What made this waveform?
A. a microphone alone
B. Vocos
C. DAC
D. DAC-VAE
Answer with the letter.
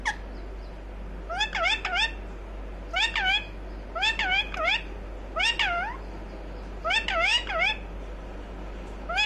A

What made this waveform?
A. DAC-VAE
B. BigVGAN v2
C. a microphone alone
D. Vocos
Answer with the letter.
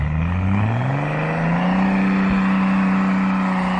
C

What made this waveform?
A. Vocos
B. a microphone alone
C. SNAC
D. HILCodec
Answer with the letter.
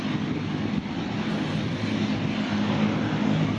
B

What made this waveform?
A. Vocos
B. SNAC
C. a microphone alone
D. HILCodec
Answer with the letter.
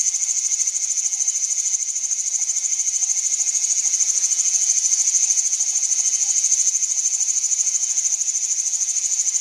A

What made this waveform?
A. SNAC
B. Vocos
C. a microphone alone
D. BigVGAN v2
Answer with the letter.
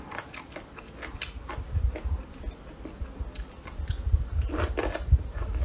C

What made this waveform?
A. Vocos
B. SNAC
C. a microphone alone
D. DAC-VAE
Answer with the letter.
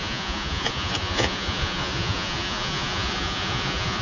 A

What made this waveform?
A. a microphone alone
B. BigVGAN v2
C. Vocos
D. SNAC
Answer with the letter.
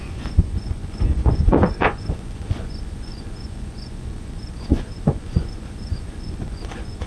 C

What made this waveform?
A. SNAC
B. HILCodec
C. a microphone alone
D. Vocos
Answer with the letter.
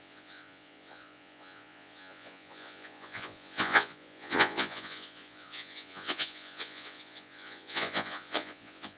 D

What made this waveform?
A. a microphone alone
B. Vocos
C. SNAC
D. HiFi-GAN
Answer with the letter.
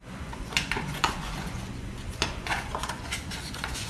B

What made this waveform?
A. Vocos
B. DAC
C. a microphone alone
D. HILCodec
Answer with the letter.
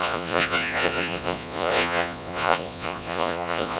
A